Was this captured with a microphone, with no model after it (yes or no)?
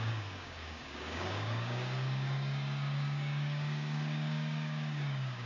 no